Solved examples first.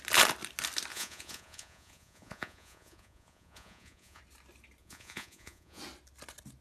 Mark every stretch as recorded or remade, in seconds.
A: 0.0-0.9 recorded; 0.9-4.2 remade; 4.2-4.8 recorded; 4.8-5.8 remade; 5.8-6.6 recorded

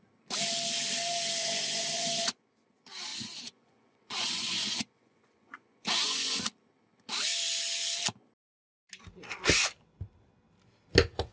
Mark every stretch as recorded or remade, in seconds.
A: 0.0-1.4 recorded; 1.4-2.5 remade; 2.5-3.1 recorded; 3.1-6.4 remade; 6.4-11.3 recorded